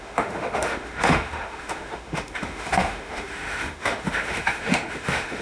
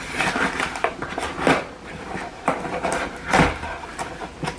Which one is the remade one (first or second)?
first